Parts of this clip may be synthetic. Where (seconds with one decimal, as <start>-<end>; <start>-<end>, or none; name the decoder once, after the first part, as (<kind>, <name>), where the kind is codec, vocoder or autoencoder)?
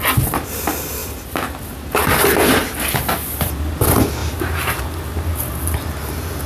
none